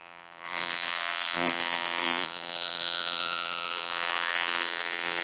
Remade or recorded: remade